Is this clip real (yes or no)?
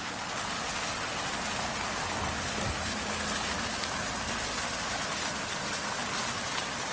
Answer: yes